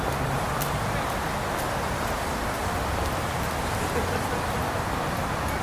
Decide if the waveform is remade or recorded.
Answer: recorded